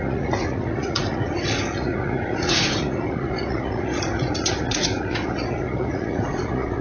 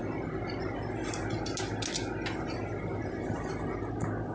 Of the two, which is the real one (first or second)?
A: second